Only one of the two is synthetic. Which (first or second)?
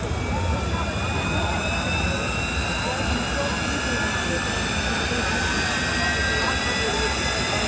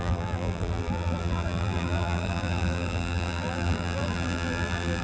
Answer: second